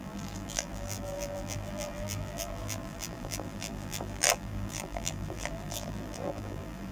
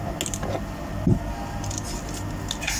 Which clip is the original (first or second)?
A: second